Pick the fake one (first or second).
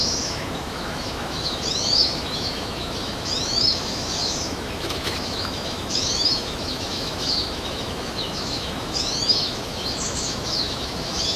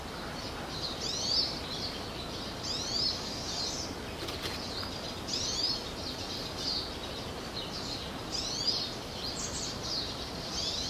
first